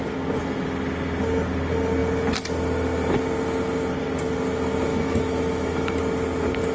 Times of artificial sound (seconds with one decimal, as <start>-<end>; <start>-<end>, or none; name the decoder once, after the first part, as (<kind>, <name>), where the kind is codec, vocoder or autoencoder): 4.9-6.0 (autoencoder, DAC-VAE)